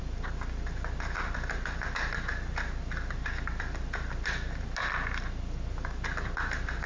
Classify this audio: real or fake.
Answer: real